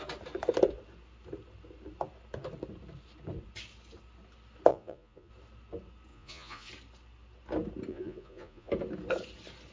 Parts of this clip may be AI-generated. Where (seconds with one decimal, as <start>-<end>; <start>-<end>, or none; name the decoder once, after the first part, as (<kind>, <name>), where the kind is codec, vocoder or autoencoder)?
4.7-5.3 (vocoder, Vocos); 6.1-6.7; 7.9-8.7